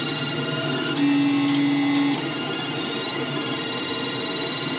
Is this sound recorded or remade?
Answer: recorded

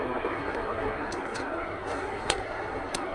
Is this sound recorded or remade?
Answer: remade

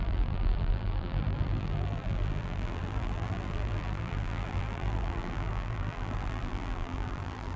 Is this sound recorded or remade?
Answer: remade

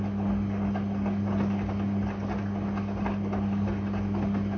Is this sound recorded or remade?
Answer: recorded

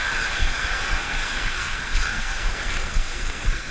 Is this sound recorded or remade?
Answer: remade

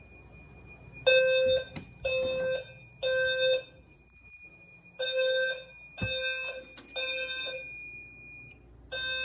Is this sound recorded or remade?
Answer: recorded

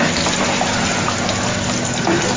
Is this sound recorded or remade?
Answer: recorded